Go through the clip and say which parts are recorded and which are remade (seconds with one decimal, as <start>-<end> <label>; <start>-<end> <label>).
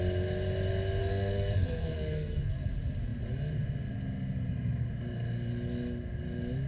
0.0-1.0 recorded; 1.0-2.7 remade; 2.7-6.7 recorded